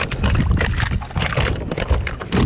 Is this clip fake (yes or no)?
no